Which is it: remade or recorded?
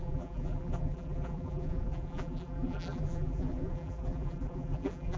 remade